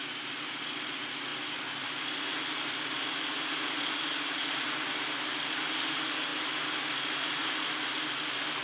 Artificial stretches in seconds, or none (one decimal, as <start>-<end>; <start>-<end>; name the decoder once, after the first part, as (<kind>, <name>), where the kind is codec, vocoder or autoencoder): none